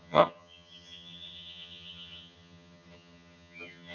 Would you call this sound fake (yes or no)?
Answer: yes